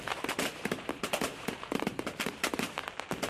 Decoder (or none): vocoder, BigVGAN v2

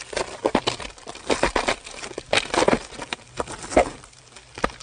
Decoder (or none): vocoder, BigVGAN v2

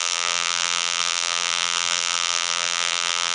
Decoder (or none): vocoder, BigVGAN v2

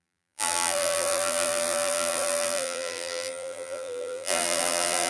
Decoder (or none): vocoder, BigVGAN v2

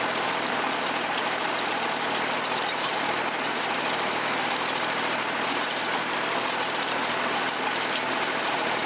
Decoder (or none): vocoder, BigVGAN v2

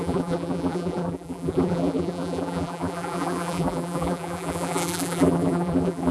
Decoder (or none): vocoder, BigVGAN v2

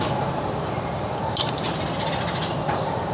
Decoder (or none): vocoder, BigVGAN v2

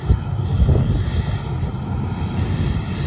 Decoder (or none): none